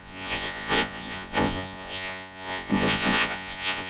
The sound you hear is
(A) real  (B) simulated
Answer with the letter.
B